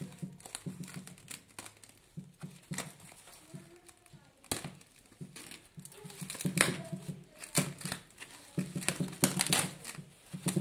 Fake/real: real